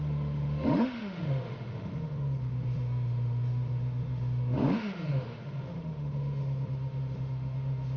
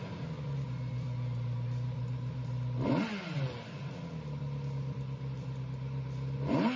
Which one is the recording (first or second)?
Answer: second